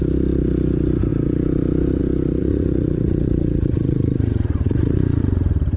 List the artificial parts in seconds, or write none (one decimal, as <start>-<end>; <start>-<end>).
2.4-5.2